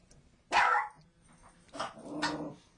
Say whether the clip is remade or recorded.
recorded